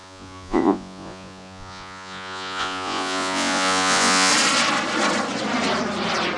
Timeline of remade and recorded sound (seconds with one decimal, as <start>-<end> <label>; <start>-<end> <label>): 0.0-4.3 remade; 4.3-6.4 recorded